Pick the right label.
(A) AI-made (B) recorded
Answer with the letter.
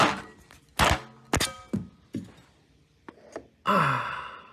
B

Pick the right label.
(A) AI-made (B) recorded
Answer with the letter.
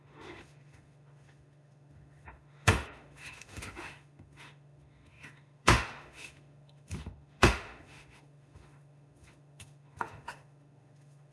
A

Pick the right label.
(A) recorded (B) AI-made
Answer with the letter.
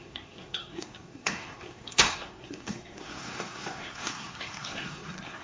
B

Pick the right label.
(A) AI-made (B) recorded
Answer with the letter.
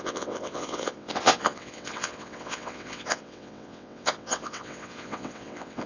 A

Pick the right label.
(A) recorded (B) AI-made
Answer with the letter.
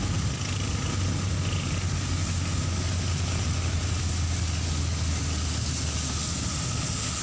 A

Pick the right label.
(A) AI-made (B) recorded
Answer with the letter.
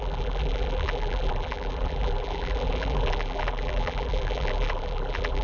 A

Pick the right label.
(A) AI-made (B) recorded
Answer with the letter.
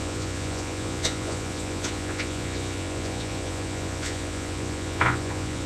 A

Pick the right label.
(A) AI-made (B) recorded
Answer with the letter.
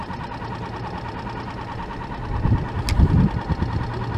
B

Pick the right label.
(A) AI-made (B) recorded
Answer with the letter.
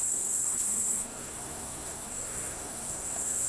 A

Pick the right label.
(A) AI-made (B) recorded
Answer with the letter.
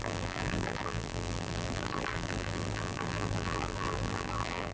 A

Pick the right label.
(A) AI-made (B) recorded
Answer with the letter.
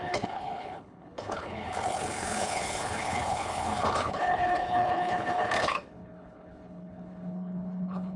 A